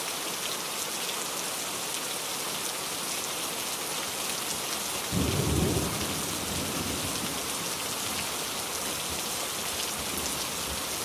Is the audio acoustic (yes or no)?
yes